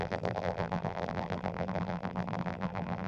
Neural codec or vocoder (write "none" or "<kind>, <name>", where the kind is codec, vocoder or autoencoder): vocoder, BigVGAN v2